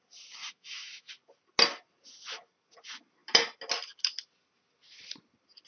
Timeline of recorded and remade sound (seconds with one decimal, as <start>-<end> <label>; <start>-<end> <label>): 0.0-0.4 recorded; 0.4-1.1 remade; 1.1-5.7 recorded